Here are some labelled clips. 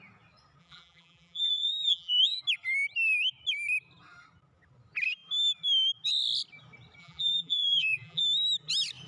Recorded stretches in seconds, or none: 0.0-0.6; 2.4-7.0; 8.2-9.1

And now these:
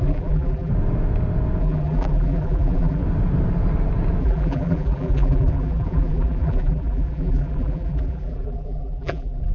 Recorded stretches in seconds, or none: 0.7-1.6; 3.0-4.2

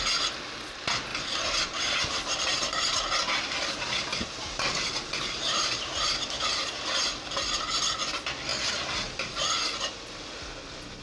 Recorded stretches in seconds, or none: 0.0-1.1; 6.2-8.5; 9.7-11.0